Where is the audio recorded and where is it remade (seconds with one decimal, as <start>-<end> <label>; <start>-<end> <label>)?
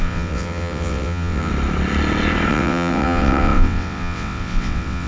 0.0-1.5 remade; 1.5-2.5 recorded; 2.5-5.1 remade